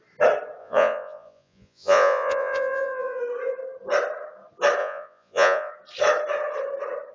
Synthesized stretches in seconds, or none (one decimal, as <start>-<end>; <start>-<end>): 0.6-3.2; 4.8-5.7